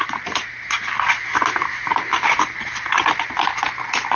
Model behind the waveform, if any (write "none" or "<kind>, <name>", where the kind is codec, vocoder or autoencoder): none